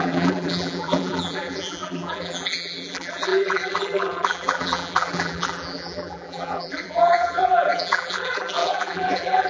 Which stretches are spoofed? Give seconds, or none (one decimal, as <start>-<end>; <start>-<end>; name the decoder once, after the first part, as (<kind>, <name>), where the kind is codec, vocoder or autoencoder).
0.0-9.5 (vocoder, BigVGAN v2)